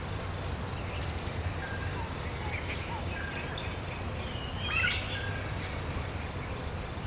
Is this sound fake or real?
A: real